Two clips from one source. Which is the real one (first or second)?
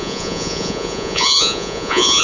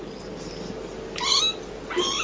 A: second